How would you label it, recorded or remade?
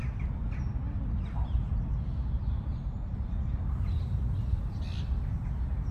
recorded